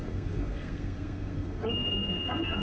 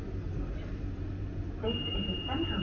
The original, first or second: second